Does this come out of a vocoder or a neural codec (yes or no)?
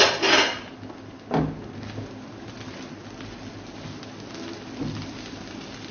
no